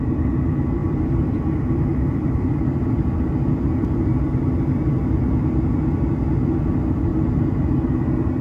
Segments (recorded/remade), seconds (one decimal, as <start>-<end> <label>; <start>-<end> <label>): 0.0-0.8 recorded; 0.8-2.9 remade; 2.9-8.4 recorded